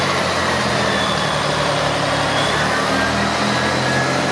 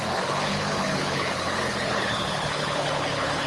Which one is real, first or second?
first